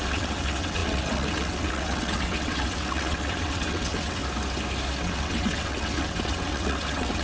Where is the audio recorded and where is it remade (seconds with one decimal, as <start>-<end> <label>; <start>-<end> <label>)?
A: 0.0-4.2 remade; 4.2-5.0 recorded; 5.0-7.2 remade

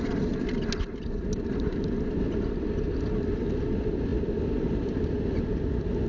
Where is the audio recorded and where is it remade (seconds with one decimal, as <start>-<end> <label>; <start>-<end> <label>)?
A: 0.0-6.1 recorded

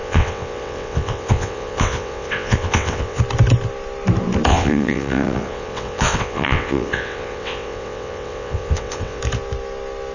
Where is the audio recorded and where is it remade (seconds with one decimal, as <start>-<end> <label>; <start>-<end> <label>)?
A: 0.0-3.2 remade; 3.2-4.5 recorded; 4.5-9.2 remade; 9.2-10.1 recorded

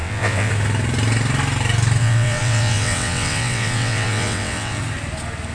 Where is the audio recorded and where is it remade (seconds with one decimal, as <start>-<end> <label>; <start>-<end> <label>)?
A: 0.0-0.5 remade; 0.5-2.0 recorded; 2.0-4.8 remade; 4.8-5.5 recorded

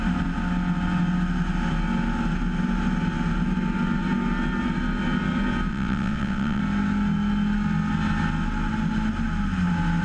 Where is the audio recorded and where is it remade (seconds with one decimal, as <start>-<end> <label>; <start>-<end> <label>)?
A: 0.0-5.7 recorded; 5.7-6.6 remade; 6.6-10.0 recorded